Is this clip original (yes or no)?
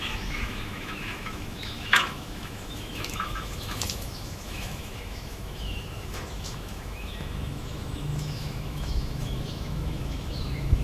no